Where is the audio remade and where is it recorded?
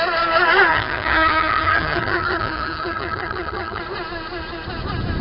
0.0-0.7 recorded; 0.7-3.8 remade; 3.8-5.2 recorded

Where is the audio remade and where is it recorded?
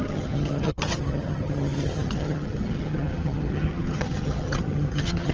0.0-5.3 remade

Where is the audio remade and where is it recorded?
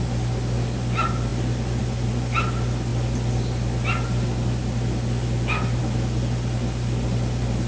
0.0-7.7 recorded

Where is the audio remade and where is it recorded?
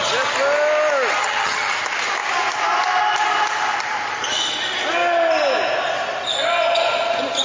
0.0-1.2 recorded; 1.2-1.7 remade; 1.7-7.4 recorded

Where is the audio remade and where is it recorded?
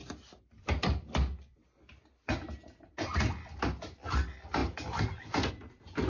0.0-6.1 recorded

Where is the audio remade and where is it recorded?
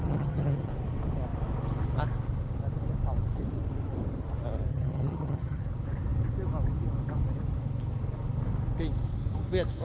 0.0-0.7 remade; 0.7-4.7 recorded; 4.7-5.6 remade; 5.6-9.8 recorded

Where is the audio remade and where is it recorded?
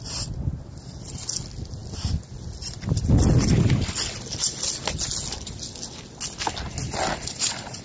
0.0-7.8 recorded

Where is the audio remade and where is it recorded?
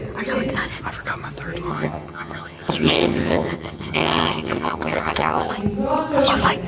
0.0-1.7 recorded; 1.7-5.5 remade; 5.5-6.7 recorded